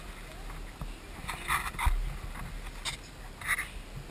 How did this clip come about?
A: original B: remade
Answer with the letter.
A